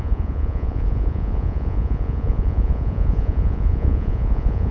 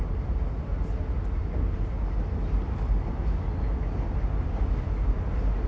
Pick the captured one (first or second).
second